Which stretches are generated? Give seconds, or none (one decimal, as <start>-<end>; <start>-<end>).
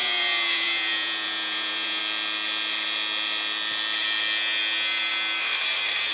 0.0-2.0